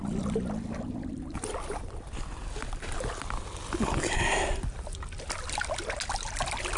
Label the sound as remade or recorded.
recorded